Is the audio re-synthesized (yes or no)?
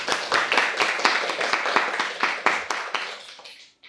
no